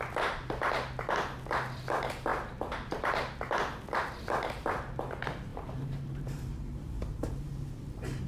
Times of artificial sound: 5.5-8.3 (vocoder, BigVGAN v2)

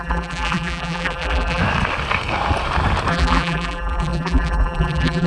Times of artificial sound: 0.0-1.6 (vocoder, BigVGAN v2); 3.1-5.3

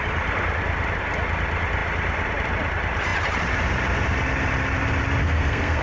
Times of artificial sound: 5.2-5.8 (codec, SNAC)

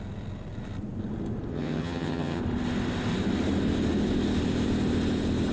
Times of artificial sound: 1.5-2.4 (vocoder, HiFi-GAN)